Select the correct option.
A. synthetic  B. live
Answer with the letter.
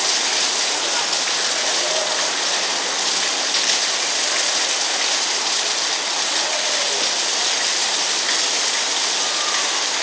B